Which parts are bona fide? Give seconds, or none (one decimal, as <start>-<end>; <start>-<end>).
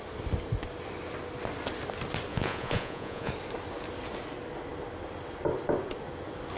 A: 0.0-2.3; 3.3-6.6